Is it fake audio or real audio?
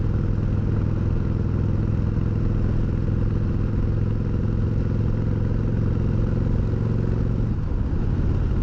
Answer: real